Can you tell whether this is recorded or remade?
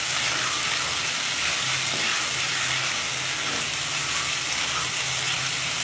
recorded